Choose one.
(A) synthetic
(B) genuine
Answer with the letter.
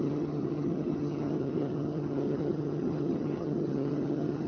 A